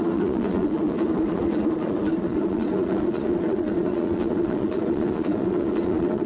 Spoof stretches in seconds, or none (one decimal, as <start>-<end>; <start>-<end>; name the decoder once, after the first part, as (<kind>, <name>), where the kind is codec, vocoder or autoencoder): 0.0-6.3 (vocoder, Vocos)